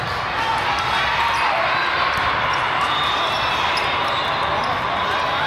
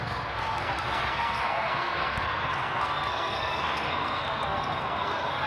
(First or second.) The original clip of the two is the first